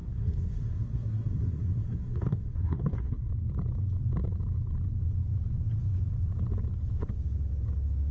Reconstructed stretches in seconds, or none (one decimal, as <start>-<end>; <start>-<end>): 0.0-3.3